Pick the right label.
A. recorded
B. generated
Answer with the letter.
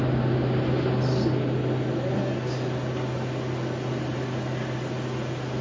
A